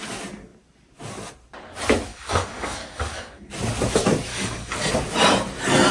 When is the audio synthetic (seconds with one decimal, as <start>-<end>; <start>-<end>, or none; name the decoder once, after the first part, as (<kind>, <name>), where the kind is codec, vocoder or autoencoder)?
2.1-3.5 (codec, DAC); 4.3-4.9